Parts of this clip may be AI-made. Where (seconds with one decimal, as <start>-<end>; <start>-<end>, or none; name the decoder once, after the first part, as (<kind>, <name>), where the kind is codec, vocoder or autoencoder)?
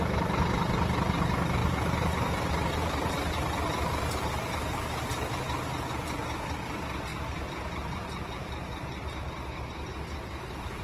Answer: 1.6-5.4 (vocoder, BigVGAN v2); 7.1-9.6